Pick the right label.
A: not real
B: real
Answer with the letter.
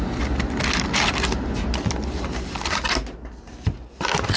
B